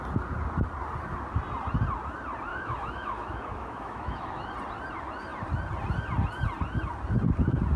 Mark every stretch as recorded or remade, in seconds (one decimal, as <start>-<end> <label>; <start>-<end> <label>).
0.0-2.5 recorded; 2.5-4.5 remade; 4.5-7.8 recorded